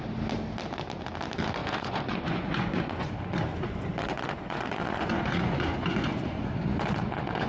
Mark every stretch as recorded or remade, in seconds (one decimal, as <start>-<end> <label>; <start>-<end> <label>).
0.0-1.6 recorded; 1.6-3.1 remade; 3.1-3.5 recorded; 3.5-7.5 remade